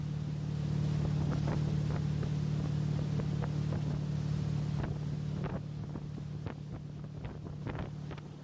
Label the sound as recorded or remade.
recorded